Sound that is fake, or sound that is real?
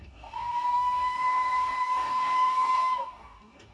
fake